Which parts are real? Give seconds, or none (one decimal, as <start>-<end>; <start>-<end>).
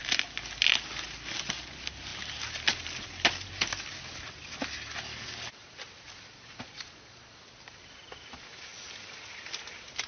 0.0-6.7; 7.3-10.1